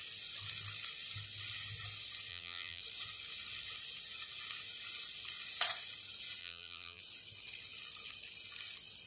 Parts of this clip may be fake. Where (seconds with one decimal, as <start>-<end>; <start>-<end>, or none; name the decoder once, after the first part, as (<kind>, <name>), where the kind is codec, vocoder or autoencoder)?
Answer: 2.3-2.8 (vocoder, BigVGAN v2); 6.4-7.0